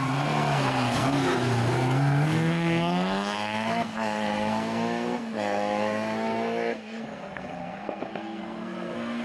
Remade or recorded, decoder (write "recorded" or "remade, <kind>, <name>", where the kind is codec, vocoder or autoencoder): remade, codec, SNAC